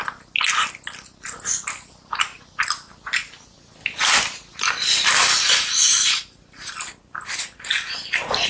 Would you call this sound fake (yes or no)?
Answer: no